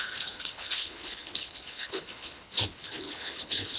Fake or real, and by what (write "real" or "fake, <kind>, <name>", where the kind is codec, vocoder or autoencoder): fake, codec, HILCodec